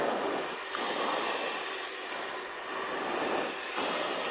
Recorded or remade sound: recorded